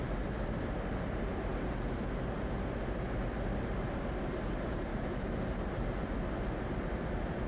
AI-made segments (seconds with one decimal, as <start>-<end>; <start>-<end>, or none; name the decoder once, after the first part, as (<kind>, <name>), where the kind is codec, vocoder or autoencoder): 4.9-5.4 (autoencoder, DAC-VAE)